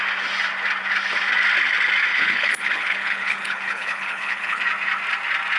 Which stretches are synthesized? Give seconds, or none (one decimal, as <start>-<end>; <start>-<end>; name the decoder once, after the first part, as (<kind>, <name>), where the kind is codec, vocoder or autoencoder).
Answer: 2.1-4.6 (codec, HILCodec)